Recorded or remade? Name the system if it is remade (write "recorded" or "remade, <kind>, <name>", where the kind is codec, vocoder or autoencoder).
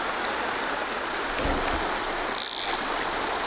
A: recorded